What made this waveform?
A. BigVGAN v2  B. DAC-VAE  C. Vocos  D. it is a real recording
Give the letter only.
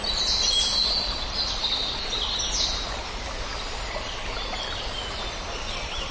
D